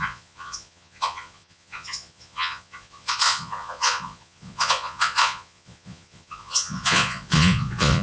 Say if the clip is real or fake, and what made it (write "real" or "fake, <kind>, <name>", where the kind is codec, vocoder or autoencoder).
fake, vocoder, Vocos